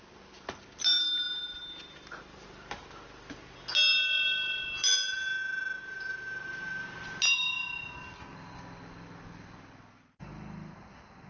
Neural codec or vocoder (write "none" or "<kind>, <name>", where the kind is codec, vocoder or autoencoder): none